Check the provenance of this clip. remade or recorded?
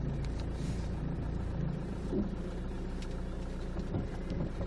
recorded